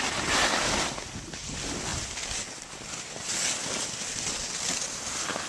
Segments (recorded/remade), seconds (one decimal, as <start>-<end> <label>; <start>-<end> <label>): 0.0-5.5 recorded